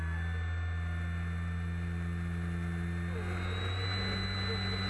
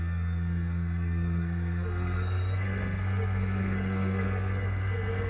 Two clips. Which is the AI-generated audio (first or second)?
second